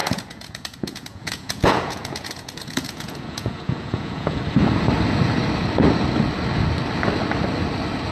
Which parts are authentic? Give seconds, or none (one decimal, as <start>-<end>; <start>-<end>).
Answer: 4.4-8.1

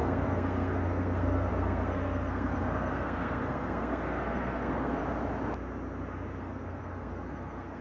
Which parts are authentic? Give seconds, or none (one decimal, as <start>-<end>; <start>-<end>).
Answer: 5.0-6.4

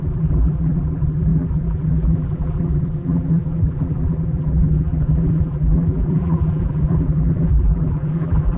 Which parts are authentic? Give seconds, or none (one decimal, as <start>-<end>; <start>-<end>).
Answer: none

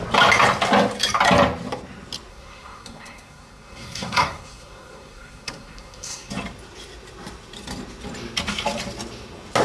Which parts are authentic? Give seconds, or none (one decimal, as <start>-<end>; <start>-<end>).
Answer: 0.0-2.3; 6.3-9.6